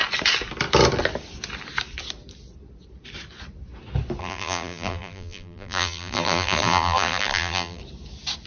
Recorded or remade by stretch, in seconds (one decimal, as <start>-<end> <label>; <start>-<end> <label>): 0.0-4.2 recorded; 4.2-7.8 remade; 7.8-8.5 recorded